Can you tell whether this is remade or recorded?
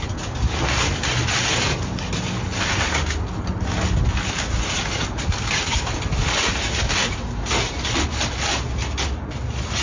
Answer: recorded